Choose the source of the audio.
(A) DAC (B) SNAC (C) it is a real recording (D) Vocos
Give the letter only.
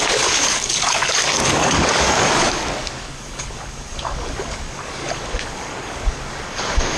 A